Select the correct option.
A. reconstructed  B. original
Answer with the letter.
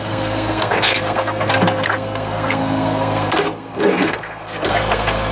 A